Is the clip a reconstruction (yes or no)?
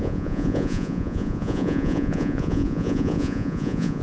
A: yes